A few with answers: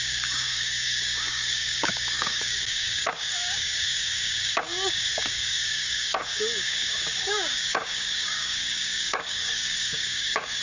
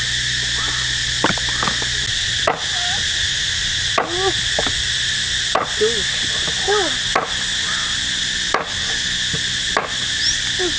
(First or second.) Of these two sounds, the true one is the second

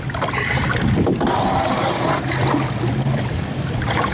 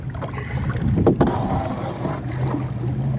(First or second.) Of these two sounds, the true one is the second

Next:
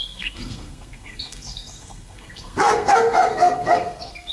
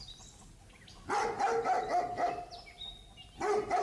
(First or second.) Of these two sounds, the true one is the second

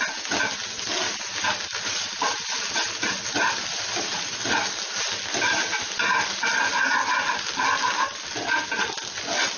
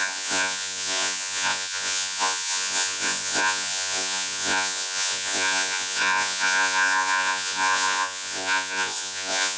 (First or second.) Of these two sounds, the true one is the first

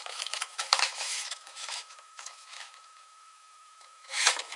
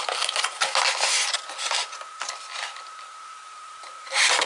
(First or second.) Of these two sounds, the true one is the second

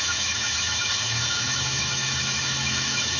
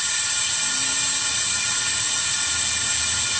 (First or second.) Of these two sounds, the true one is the second